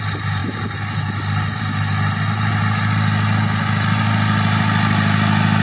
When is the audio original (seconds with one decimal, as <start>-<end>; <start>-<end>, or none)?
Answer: 0.0-5.6